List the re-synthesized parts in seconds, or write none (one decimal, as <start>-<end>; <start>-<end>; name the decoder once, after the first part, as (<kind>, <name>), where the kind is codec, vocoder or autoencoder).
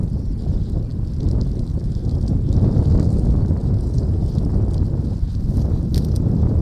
3.6-4.2 (vocoder, Vocos)